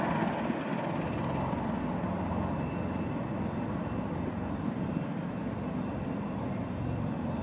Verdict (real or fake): real